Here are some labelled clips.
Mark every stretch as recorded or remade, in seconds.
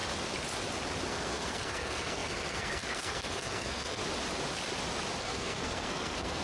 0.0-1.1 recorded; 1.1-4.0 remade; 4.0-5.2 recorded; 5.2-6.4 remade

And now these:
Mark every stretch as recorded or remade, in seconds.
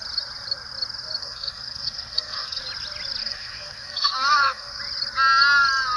0.0-1.2 recorded; 1.2-2.6 remade; 2.6-3.2 recorded; 3.2-4.8 remade; 4.8-6.0 recorded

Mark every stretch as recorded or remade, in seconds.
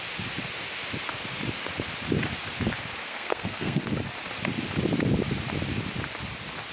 0.0-3.1 recorded; 3.1-3.8 remade; 3.8-6.7 recorded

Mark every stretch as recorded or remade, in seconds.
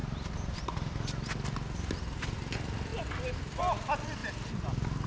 0.0-5.1 recorded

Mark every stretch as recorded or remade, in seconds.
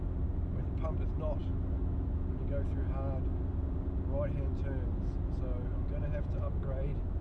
0.0-7.2 recorded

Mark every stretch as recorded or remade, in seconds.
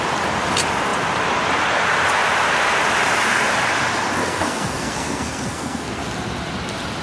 0.0-4.2 recorded; 4.2-6.1 remade; 6.1-7.0 recorded